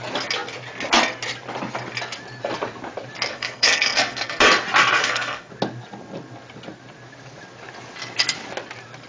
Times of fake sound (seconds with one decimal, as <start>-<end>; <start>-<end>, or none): 3.3-4.4; 5.0-5.5